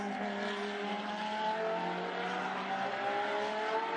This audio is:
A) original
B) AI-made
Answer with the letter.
A